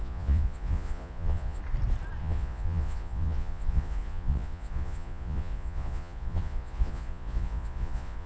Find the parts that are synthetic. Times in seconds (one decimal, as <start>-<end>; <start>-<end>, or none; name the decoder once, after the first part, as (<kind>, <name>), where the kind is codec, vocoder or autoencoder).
0.0-1.6 (vocoder, Vocos); 2.2-8.3